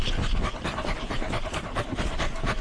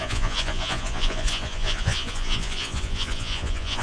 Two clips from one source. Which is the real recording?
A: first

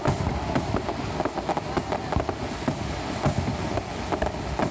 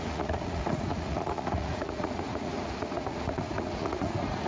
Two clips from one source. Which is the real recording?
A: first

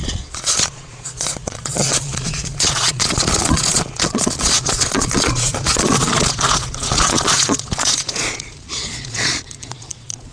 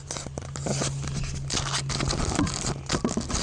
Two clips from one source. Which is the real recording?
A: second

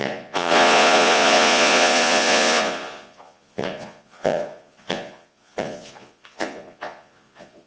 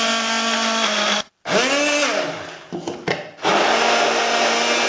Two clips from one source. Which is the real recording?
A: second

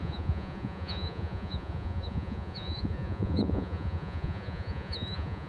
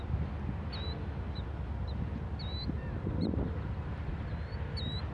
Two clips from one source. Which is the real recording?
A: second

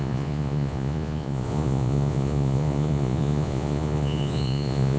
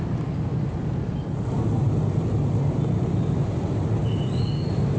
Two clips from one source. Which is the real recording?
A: second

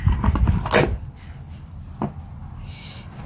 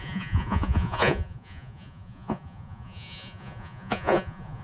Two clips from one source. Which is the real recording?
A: first